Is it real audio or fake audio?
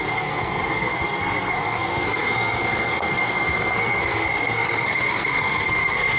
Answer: fake